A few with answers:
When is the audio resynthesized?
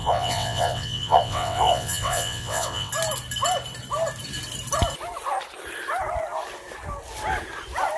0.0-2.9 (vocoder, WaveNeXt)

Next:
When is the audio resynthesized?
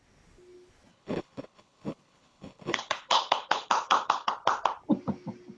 0.9-4.3 (codec, HILCodec)